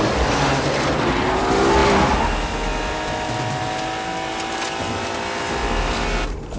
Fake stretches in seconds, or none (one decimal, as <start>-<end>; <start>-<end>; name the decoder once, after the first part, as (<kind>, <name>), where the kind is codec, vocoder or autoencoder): none